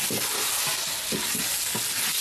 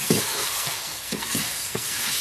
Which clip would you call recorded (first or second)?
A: first